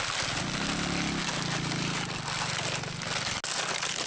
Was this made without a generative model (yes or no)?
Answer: yes